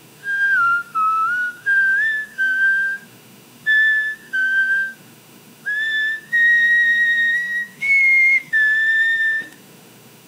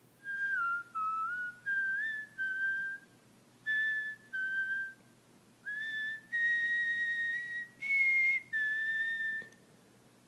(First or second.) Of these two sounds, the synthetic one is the first